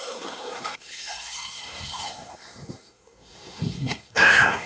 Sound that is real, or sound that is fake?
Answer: fake